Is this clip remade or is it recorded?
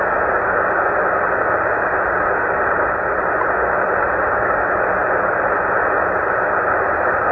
recorded